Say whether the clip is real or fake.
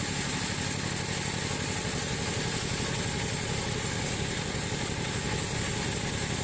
real